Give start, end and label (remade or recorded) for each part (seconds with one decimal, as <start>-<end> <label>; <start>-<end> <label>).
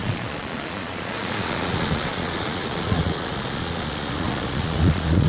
0.0-5.3 remade